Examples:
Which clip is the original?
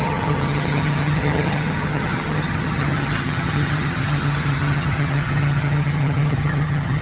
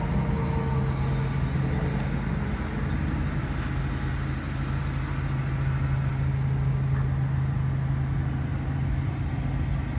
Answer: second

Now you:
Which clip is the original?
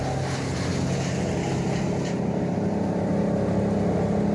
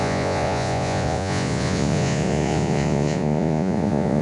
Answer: first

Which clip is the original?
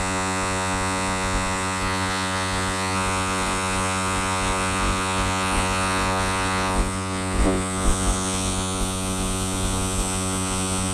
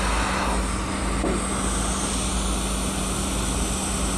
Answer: second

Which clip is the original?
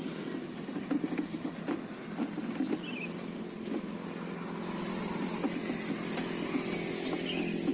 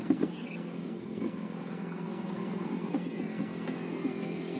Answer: first